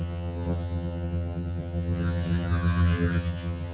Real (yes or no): no